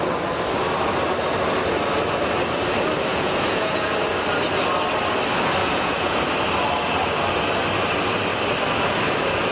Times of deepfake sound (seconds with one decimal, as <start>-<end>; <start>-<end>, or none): 3.1-3.9; 5.6-6.2